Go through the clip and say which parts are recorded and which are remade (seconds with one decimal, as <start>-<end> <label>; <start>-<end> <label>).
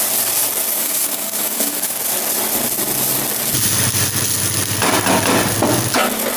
0.0-0.7 recorded; 0.7-2.0 remade; 2.0-6.4 recorded